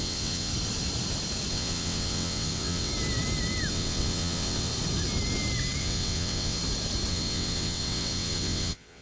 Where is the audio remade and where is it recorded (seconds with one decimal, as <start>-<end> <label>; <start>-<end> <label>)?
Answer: 0.0-0.5 remade; 0.5-1.5 recorded; 1.5-2.9 remade; 2.9-3.7 recorded; 3.7-4.7 remade; 4.7-5.8 recorded; 5.8-6.6 remade; 6.6-7.1 recorded; 7.1-9.0 remade